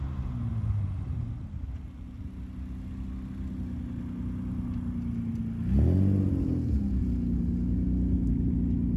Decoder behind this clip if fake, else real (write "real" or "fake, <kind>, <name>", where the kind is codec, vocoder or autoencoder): real